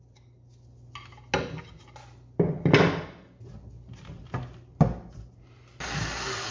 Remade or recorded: recorded